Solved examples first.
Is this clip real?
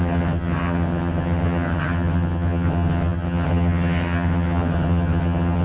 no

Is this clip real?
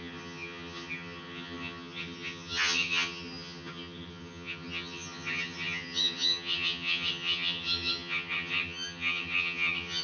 no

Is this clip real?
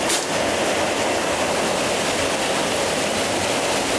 yes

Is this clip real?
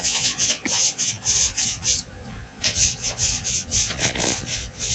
no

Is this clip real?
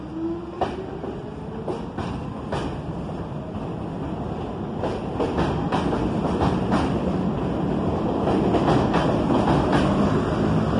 yes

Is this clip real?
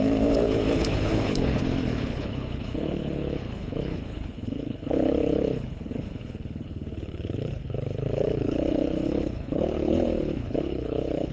no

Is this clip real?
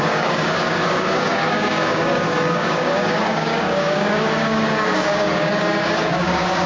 no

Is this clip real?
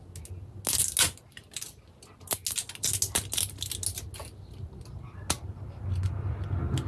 yes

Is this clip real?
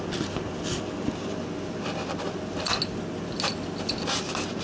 yes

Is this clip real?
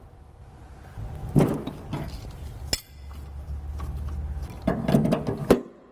yes